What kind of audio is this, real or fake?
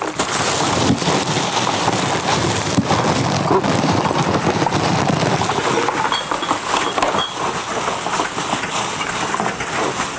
real